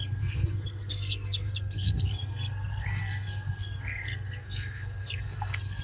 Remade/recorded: remade